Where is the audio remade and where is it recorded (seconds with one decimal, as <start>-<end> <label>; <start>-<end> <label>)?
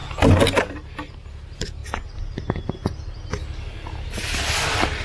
0.0-5.0 recorded